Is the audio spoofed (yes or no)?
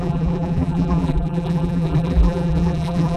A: yes